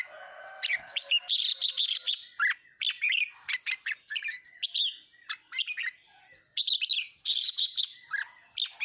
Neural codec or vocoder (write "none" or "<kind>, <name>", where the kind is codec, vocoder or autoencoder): none